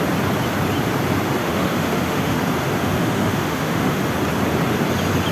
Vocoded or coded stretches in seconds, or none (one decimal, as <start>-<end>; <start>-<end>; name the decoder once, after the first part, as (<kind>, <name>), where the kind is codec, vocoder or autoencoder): 1.4-2.4 (autoencoder, DAC-VAE); 2.8-4.0